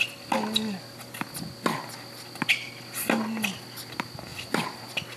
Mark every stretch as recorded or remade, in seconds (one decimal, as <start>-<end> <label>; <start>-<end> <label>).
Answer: 0.0-5.2 recorded